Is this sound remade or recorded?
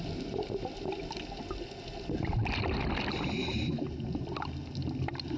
recorded